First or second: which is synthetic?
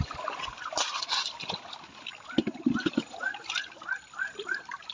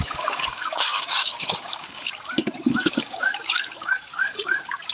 second